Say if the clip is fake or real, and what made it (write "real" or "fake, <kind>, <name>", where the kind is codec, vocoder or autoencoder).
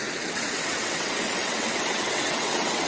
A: fake, vocoder, WaveNeXt